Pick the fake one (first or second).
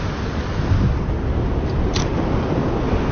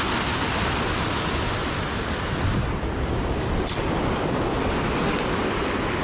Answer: second